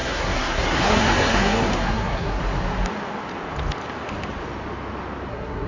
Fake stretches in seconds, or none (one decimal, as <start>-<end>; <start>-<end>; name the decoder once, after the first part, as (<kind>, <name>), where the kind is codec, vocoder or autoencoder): 0.0-2.4 (codec, SNAC); 5.3-5.7